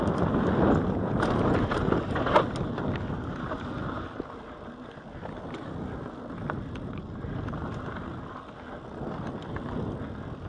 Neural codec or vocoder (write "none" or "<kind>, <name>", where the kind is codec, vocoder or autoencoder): none